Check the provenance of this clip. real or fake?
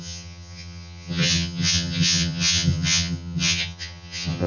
fake